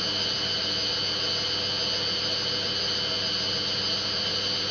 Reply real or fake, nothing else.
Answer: real